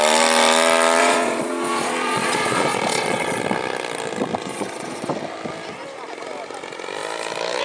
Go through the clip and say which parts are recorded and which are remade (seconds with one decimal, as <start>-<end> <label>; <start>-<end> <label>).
0.0-1.0 recorded; 1.0-3.4 remade; 3.4-4.5 recorded; 4.5-5.1 remade; 5.1-7.6 recorded